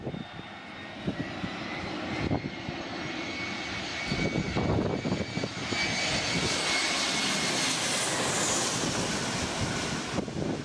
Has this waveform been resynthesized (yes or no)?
no